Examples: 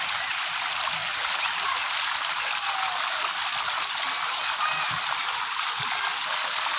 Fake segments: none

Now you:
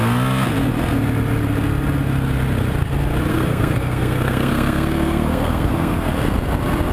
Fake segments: 3.3-6.1 (codec, SNAC)

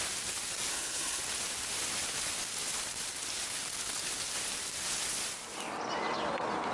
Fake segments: 0.7-1.2 (codec, SNAC)

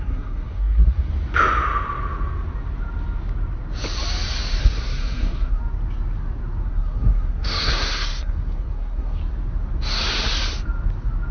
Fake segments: 0.0-1.1 (codec, SNAC); 4.6-5.6; 6.7-9.2